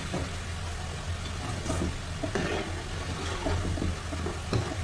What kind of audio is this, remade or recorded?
recorded